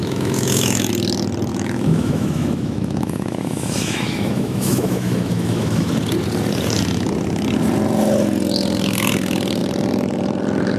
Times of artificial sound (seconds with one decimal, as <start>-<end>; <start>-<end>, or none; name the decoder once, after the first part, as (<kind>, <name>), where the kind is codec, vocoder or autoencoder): 0.0-0.9 (autoencoder, DAC-VAE); 1.5-5.9